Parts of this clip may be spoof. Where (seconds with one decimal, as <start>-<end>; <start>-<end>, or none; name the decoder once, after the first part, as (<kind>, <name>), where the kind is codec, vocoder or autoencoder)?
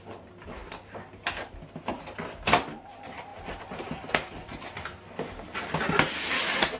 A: none